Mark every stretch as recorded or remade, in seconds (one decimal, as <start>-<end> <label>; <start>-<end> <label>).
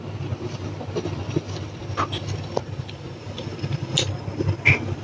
0.0-5.0 recorded